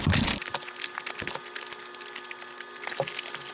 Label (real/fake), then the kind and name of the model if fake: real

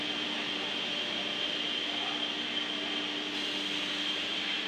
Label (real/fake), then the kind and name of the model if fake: real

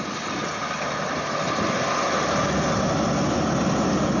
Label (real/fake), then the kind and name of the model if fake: real